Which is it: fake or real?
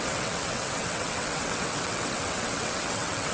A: fake